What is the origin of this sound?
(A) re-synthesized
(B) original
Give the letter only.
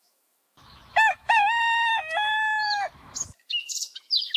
A